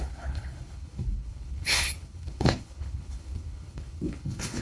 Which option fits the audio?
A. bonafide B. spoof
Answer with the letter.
B